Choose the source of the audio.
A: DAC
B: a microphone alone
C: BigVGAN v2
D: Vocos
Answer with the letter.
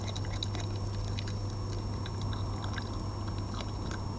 B